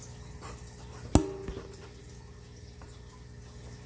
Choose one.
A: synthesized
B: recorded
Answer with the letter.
B